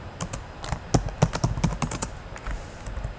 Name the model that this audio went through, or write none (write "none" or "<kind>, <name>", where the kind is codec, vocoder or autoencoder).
none